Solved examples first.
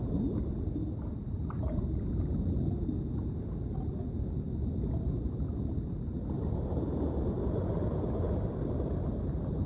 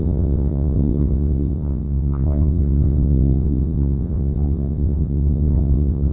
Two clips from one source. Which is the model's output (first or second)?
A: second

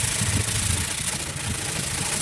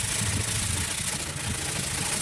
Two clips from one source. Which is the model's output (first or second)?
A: first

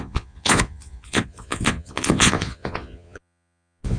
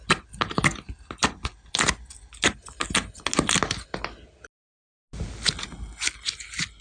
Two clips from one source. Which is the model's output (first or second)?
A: first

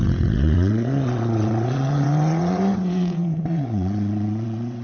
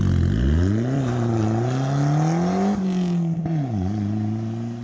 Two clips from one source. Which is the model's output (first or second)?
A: first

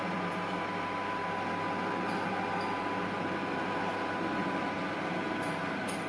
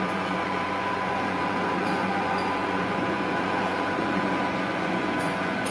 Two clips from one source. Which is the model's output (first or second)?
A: second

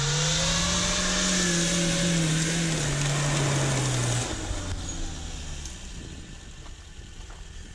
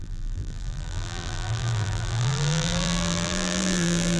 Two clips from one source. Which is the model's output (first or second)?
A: second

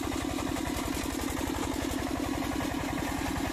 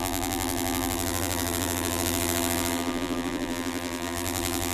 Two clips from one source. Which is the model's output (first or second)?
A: second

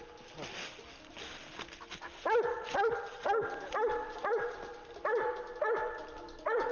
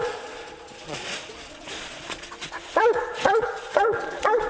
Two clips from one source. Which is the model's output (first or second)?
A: second